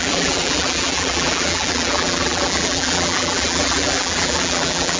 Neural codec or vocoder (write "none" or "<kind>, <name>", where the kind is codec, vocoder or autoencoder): vocoder, BigVGAN v2